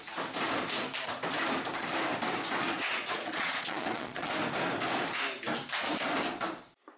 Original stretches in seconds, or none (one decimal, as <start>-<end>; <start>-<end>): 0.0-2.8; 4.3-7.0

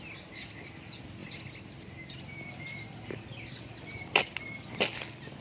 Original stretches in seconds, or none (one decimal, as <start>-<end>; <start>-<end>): 0.0-1.2; 4.4-5.4

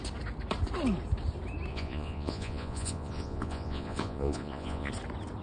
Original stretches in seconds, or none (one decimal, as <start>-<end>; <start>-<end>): 0.0-1.7; 4.9-5.4

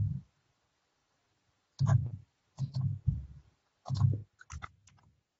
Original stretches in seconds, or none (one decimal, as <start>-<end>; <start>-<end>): 0.0-1.0; 3.6-5.4

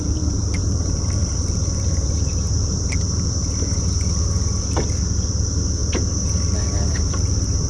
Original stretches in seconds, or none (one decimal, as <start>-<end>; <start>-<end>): 3.4-5.3